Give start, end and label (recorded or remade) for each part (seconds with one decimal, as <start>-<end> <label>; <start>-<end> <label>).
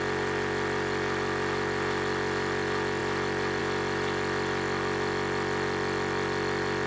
0.0-6.9 recorded